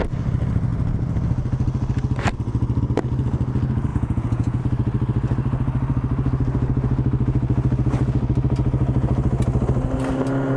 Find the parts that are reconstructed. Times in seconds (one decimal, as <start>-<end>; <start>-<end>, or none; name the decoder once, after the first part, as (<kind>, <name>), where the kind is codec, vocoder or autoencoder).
3.9-4.6 (vocoder, Vocos)